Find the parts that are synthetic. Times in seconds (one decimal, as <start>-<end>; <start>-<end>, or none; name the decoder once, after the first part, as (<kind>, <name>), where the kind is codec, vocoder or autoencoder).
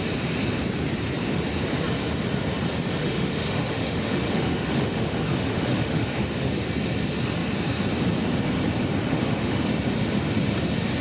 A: 3.0-6.5 (autoencoder, DAC-VAE); 9.1-9.7